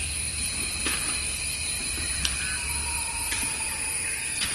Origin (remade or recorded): recorded